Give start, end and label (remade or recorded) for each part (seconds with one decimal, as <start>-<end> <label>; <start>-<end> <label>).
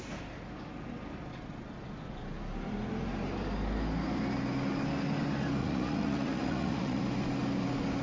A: 0.0-5.6 recorded; 5.6-7.0 remade; 7.0-8.0 recorded